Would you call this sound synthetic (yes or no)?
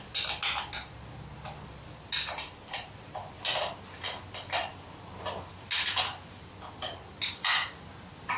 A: no